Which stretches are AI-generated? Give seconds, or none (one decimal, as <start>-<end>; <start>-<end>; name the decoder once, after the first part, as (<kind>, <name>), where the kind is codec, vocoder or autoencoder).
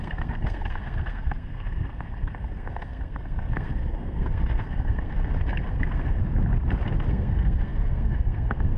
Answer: 0.0-6.2 (codec, SNAC); 7.1-8.8